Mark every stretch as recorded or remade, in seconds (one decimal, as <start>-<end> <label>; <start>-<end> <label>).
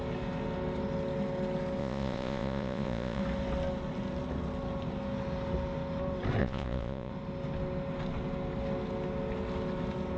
0.0-1.8 recorded; 1.8-3.2 remade; 3.2-6.4 recorded; 6.4-7.1 remade; 7.1-10.2 recorded